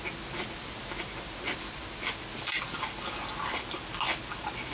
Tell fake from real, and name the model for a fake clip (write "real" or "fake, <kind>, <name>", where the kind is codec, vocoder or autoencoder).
real